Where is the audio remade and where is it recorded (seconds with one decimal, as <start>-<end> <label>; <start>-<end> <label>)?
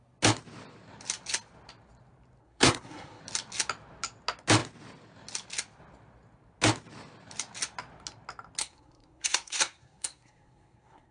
0.0-2.4 recorded; 2.4-3.2 remade; 3.2-8.6 recorded; 8.6-11.1 remade